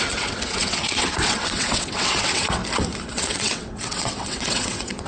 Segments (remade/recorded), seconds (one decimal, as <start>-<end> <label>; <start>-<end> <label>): 0.0-2.6 remade; 2.6-3.1 recorded; 3.1-5.1 remade

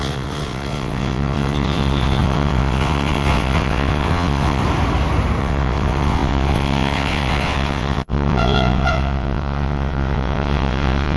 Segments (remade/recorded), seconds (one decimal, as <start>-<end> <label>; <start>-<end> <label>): 0.0-4.6 remade; 4.6-5.4 recorded; 5.4-11.2 remade

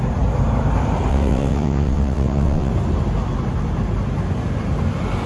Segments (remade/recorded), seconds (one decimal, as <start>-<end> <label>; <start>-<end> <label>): 0.0-1.1 recorded; 1.1-2.7 remade; 2.7-5.3 recorded

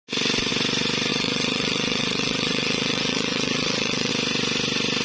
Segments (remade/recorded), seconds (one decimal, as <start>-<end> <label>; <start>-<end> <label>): 0.0-1.1 recorded; 1.1-4.1 remade; 4.1-5.0 recorded

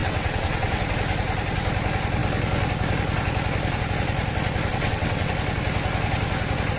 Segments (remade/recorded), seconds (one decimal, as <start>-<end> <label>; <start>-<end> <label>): 0.0-0.8 remade; 0.8-4.7 recorded; 4.7-5.3 remade; 5.3-6.8 recorded

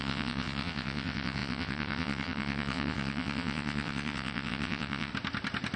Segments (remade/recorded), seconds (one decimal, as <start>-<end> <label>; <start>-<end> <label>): 0.0-5.1 remade; 5.1-5.8 recorded

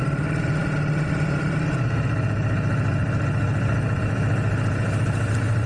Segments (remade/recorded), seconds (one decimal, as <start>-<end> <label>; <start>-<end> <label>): 0.0-5.7 recorded